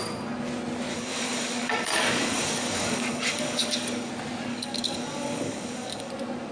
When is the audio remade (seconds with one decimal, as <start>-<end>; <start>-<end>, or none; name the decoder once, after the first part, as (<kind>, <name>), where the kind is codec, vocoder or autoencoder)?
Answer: 0.9-4.1 (codec, DAC); 4.5-6.1